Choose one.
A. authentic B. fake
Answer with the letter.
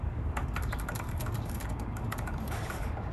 B